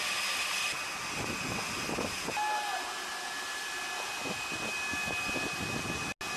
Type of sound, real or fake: real